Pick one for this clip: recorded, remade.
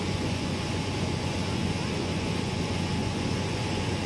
remade